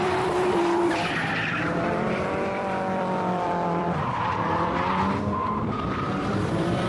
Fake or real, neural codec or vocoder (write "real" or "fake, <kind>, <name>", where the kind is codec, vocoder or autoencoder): fake, vocoder, BigVGAN v2